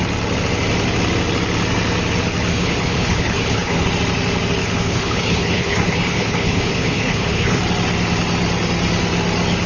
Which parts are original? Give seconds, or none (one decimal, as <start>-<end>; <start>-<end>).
0.0-2.5; 3.9-4.6; 7.6-9.7